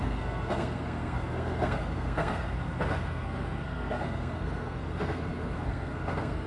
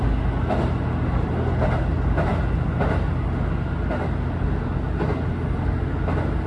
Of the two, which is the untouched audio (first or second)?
second